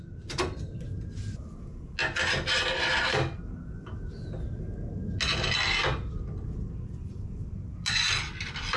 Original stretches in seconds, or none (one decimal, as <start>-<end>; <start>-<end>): 0.0-8.8